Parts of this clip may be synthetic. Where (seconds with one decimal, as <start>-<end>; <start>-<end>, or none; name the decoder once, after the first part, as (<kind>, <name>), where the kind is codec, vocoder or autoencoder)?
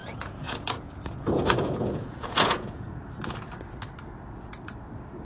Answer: 0.0-3.1 (vocoder, Vocos)